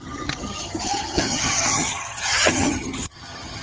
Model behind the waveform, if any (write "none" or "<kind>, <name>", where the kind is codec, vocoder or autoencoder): vocoder, HiFi-GAN